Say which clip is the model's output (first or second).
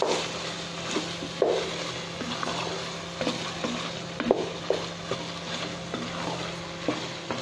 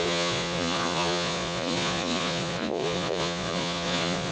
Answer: second